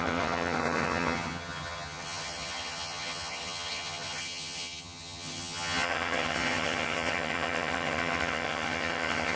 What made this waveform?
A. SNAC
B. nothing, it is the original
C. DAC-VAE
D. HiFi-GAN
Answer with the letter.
D